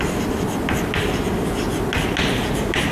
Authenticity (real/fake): real